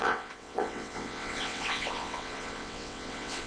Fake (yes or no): yes